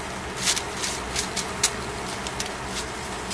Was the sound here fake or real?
real